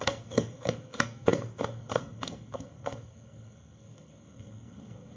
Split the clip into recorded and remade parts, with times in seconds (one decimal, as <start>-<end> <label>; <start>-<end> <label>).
0.0-5.2 remade